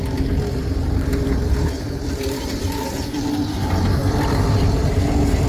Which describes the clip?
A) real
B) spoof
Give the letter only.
B